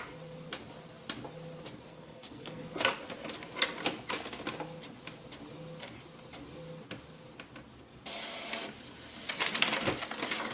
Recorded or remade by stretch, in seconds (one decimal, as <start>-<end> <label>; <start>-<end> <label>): 0.0-1.9 recorded; 1.9-2.6 remade; 2.6-10.5 recorded